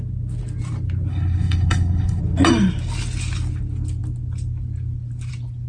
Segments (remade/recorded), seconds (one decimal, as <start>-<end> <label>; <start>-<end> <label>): 0.0-1.1 recorded; 1.1-2.2 remade; 2.2-5.7 recorded